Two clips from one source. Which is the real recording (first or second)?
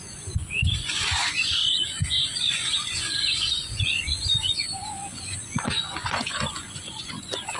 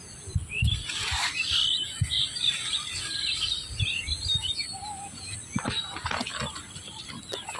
second